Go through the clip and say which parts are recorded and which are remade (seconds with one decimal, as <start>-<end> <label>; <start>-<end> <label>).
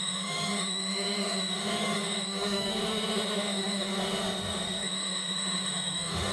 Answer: 0.0-6.3 remade